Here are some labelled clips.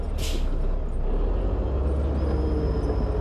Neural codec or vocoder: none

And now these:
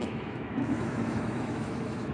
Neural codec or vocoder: autoencoder, DAC-VAE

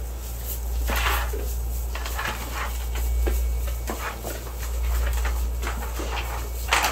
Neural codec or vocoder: none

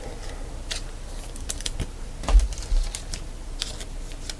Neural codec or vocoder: none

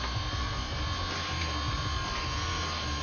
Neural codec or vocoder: none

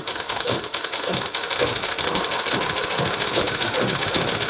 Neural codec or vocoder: autoencoder, DAC-VAE